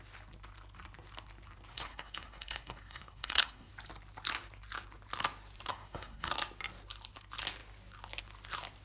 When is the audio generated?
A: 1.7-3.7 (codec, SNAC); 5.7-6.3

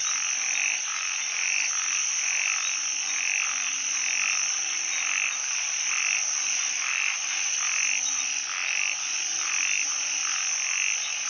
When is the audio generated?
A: none

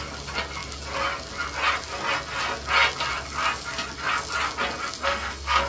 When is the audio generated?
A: 5.0-5.7 (codec, SNAC)

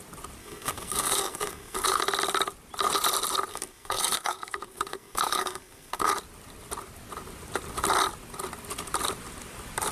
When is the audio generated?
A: 0.4-2.0 (codec, SNAC); 3.5-6.1